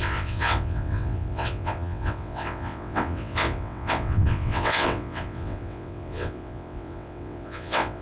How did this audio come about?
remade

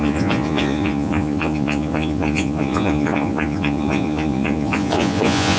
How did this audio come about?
remade